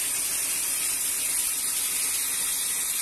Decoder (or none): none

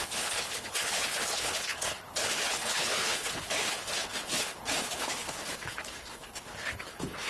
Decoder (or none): codec, HILCodec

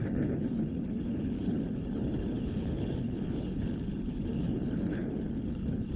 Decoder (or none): codec, HILCodec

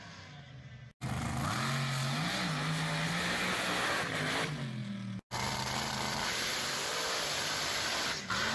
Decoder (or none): none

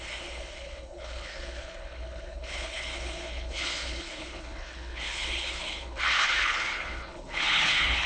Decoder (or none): codec, HILCodec